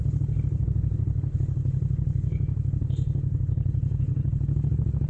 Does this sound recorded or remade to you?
remade